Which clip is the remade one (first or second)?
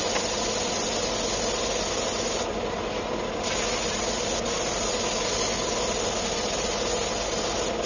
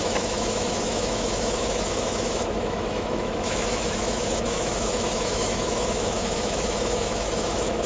second